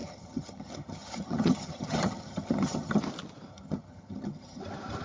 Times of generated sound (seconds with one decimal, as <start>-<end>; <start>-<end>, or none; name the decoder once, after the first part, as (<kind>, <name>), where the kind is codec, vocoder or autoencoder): 0.0-3.0 (vocoder, HiFi-GAN); 3.5-4.6